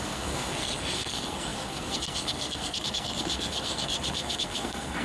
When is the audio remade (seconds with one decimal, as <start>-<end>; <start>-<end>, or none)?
0.0-5.0